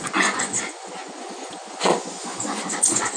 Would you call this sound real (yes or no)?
no